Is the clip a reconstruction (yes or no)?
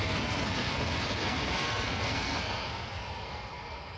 yes